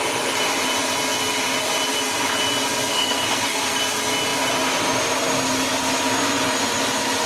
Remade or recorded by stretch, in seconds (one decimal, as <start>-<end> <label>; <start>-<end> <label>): 0.0-2.9 recorded; 2.9-3.8 remade; 3.8-7.3 recorded